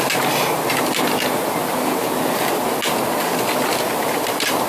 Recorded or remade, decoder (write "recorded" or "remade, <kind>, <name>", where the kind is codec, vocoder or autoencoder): recorded